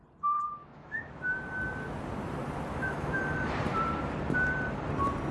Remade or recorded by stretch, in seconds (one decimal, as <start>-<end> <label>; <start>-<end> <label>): 0.0-0.6 recorded; 0.6-1.2 remade; 1.2-2.7 recorded; 2.7-3.2 remade; 3.2-5.3 recorded